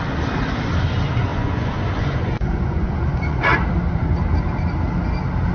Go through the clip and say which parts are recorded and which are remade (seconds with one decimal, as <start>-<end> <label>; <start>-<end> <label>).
0.0-1.3 recorded; 1.3-3.4 remade; 3.4-5.5 recorded